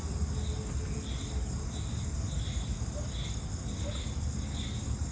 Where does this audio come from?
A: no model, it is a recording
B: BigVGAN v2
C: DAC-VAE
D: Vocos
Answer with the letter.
A